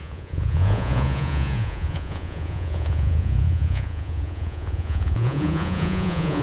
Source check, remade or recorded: remade